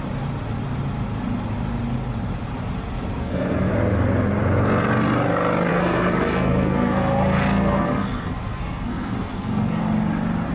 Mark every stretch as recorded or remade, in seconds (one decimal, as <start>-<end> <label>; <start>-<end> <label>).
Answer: 0.0-3.2 recorded; 3.2-3.7 remade; 3.7-5.7 recorded; 5.7-9.8 remade; 9.8-10.5 recorded